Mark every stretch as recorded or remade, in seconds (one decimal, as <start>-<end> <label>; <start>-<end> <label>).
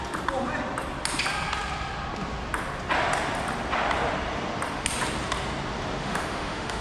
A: 0.0-6.0 recorded; 6.0-6.8 remade